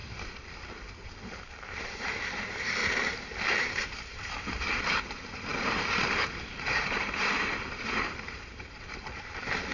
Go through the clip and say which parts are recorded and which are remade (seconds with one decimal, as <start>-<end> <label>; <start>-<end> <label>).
0.0-1.5 recorded; 1.5-2.8 remade; 2.8-3.6 recorded; 3.6-9.7 remade